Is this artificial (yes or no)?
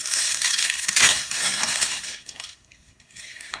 yes